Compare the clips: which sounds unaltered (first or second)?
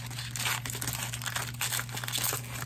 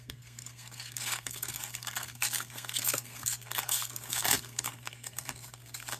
first